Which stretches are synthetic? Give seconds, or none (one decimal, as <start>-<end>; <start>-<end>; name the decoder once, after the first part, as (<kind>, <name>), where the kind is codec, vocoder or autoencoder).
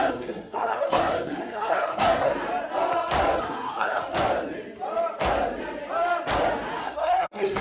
0.0-2.3 (codec, SNAC); 3.4-4.0; 6.8-7.6